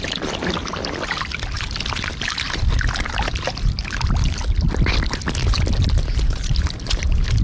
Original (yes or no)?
yes